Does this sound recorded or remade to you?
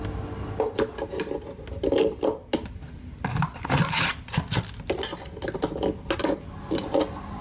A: recorded